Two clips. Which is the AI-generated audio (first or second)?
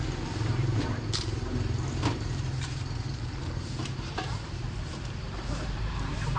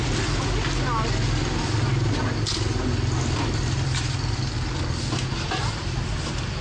first